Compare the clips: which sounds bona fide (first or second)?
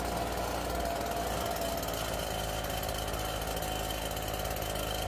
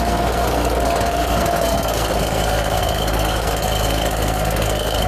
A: first